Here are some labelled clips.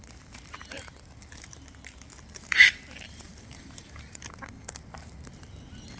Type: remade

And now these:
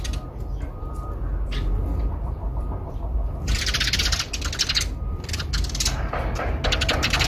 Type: remade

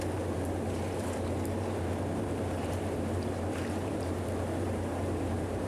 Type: remade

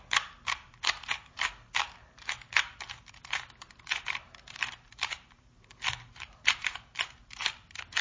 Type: remade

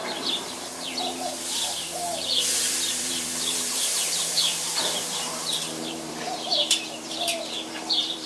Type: remade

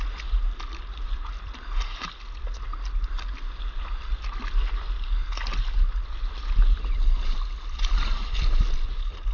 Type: recorded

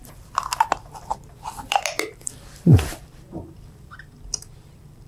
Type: remade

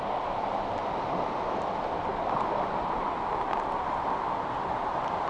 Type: recorded